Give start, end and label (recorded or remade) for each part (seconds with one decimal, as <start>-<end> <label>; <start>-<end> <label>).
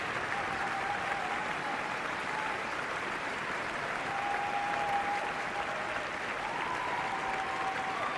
0.0-1.4 recorded; 1.4-5.3 remade; 5.3-8.2 recorded